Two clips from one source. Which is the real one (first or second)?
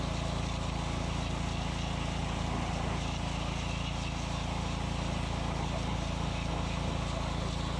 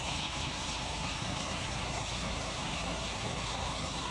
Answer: first